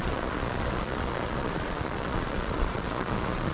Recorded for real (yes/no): no